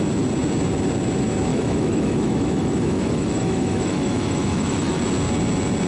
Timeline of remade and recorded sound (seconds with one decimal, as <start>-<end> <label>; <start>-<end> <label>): 0.0-1.5 recorded; 1.5-5.0 remade; 5.0-5.9 recorded

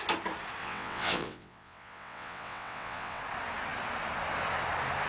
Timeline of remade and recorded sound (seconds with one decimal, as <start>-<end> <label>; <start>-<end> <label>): 0.0-0.6 recorded; 0.6-3.2 remade; 3.2-5.1 recorded

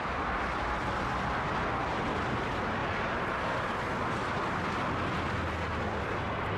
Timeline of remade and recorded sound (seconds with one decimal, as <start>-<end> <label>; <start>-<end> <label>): 0.0-6.6 recorded

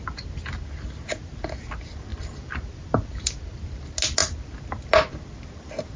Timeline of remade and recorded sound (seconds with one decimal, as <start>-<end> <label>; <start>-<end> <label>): 0.0-2.1 recorded; 2.1-3.6 remade; 3.6-6.0 recorded